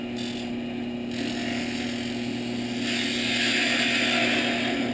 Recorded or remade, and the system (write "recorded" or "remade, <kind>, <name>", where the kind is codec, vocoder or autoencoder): recorded